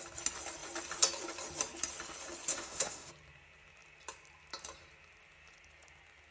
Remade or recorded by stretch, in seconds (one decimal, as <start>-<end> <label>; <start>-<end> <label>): 0.0-2.5 recorded; 2.5-3.1 remade; 3.1-6.3 recorded